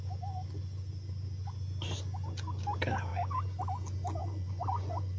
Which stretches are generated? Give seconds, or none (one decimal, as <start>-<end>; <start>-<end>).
3.1-3.6; 4.2-5.2